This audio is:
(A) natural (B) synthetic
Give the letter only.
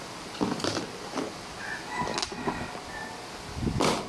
A